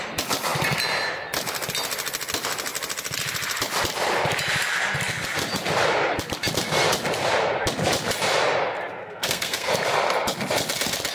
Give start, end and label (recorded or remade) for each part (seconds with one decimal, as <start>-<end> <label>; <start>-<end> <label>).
0.0-9.0 recorded; 9.0-9.7 remade; 9.7-11.1 recorded